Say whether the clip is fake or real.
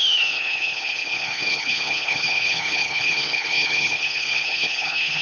fake